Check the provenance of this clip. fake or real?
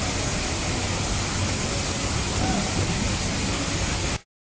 real